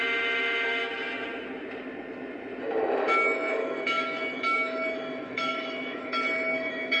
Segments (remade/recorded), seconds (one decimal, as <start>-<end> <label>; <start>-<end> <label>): 0.0-0.8 remade; 0.8-2.6 recorded; 2.6-7.0 remade